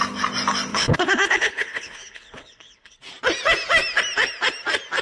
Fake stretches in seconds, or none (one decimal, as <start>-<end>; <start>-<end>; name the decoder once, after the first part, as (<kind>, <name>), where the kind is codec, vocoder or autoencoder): 0.7-3.0 (codec, HILCodec)